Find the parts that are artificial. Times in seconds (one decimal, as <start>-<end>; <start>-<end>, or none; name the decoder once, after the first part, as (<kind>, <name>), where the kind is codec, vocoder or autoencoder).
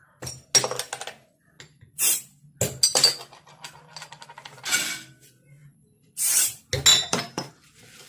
6.9-7.5 (vocoder, BigVGAN v2)